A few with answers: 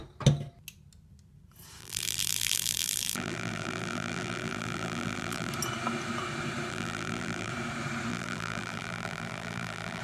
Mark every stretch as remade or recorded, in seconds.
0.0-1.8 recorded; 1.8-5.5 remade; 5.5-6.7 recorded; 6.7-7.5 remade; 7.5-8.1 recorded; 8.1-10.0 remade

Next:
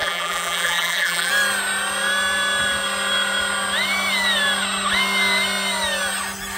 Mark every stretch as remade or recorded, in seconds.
0.0-1.3 remade; 1.3-6.6 recorded

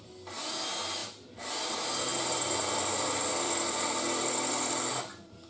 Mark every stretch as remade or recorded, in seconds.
0.0-2.1 recorded; 2.1-4.5 remade; 4.5-5.5 recorded

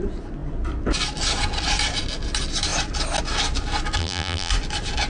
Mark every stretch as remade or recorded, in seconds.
0.0-4.0 recorded; 4.0-4.5 remade; 4.5-5.1 recorded

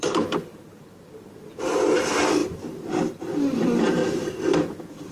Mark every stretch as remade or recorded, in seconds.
0.0-5.1 remade

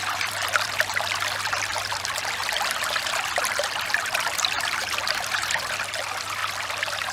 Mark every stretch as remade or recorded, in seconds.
0.0-7.1 remade

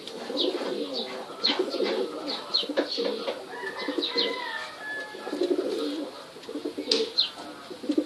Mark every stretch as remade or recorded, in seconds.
0.0-8.1 recorded

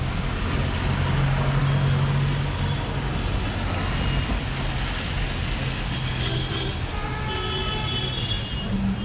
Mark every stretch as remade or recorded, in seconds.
0.0-9.0 recorded